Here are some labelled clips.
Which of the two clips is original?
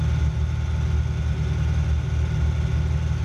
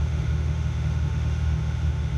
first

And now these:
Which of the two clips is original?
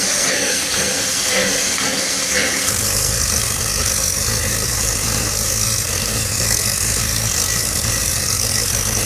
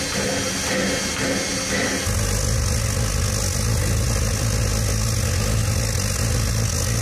second